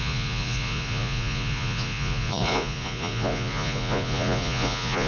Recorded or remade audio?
remade